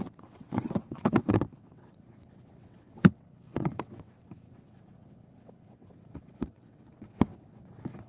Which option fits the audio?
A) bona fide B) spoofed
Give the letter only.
B